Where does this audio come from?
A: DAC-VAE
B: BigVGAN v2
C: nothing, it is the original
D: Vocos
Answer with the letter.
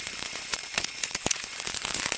D